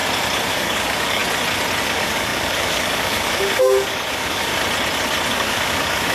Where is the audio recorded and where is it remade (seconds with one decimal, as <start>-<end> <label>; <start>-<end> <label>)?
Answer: 0.0-0.5 recorded; 0.5-1.2 remade; 1.2-1.8 recorded; 1.8-4.5 remade; 4.5-5.3 recorded; 5.3-6.1 remade